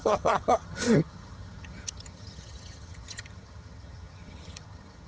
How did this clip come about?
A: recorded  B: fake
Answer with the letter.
B